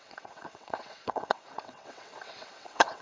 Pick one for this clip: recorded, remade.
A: remade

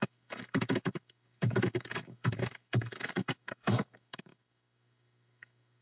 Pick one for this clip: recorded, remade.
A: remade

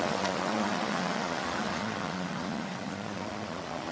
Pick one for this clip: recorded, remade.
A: remade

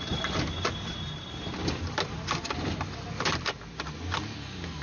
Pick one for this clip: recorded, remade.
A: recorded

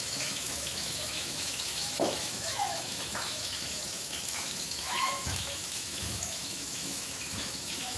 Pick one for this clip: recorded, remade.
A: remade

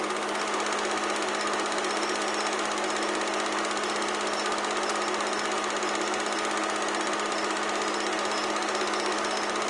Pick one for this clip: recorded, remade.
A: recorded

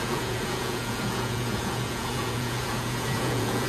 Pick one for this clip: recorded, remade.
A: remade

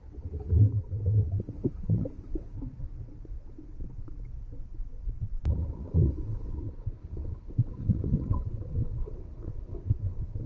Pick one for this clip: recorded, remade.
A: remade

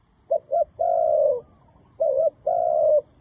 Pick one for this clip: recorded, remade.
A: recorded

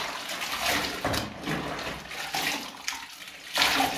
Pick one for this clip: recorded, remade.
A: recorded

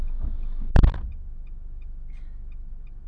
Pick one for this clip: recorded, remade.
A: recorded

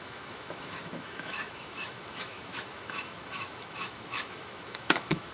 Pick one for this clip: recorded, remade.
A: remade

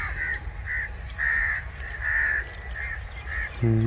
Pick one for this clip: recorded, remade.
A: recorded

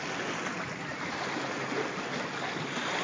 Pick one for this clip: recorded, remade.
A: recorded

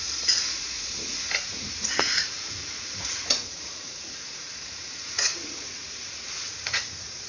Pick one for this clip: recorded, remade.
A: remade